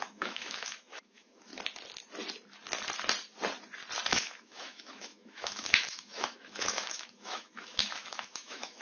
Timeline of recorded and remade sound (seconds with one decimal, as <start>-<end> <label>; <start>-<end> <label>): 0.0-1.5 remade; 1.5-4.1 recorded; 4.1-8.8 remade